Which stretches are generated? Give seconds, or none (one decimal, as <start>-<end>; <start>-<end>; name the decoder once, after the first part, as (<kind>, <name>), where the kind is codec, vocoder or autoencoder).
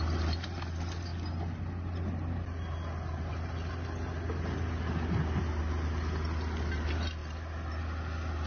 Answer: none